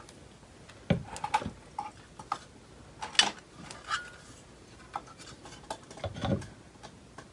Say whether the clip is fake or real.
real